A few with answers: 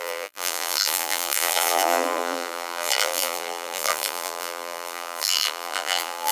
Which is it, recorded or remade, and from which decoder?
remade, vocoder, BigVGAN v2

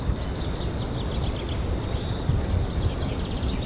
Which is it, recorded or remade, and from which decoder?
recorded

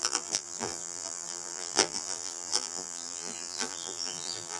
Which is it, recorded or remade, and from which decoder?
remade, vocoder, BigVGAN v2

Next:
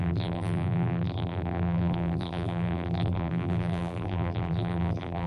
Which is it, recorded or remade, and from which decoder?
remade, vocoder, BigVGAN v2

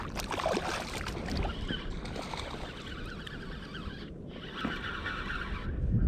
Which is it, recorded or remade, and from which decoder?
recorded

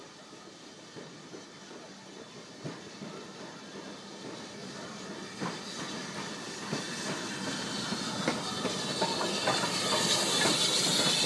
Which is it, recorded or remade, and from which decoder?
recorded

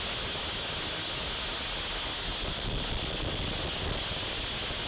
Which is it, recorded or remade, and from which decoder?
recorded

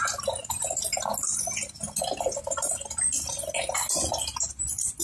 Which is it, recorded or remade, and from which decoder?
recorded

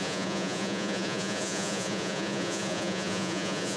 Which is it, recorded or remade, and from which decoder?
remade, vocoder, Vocos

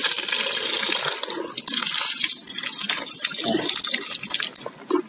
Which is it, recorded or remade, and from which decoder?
recorded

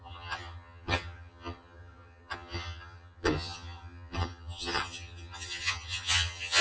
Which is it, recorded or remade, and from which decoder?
remade, vocoder, HiFi-GAN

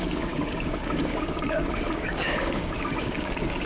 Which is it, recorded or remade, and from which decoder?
remade, codec, DAC